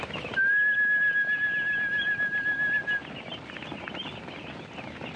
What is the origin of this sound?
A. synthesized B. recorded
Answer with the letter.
B